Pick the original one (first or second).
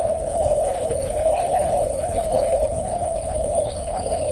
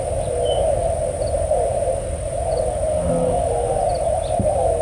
second